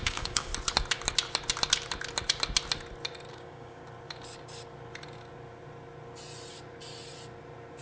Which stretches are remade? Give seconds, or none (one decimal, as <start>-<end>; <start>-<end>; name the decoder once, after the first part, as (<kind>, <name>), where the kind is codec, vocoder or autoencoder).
0.0-0.5 (codec, DAC); 3.3-3.8